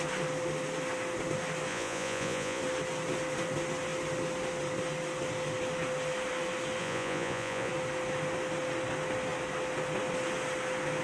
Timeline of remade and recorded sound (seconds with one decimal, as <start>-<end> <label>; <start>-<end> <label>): 0.0-1.7 recorded; 1.7-2.6 remade; 2.6-6.8 recorded; 6.8-7.7 remade; 7.7-11.0 recorded